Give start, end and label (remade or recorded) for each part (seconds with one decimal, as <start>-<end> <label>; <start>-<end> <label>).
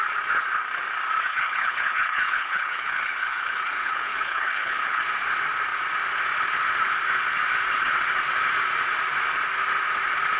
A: 0.0-1.3 recorded; 1.3-5.0 remade; 5.0-10.4 recorded